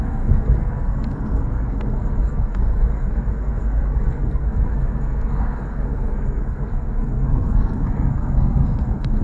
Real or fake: fake